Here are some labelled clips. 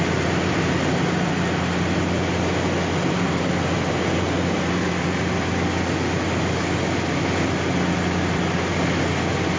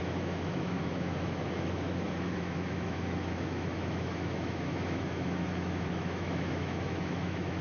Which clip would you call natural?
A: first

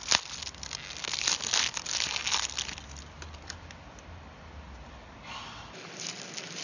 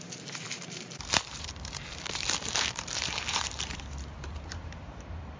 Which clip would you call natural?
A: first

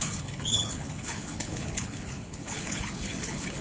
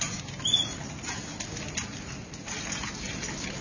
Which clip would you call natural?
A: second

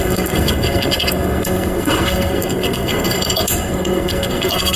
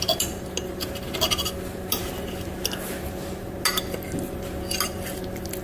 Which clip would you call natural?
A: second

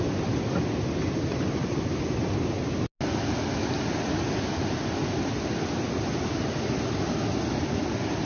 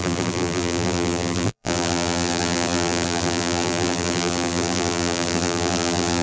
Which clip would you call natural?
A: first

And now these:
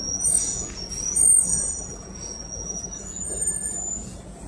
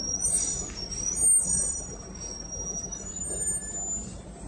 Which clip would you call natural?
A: second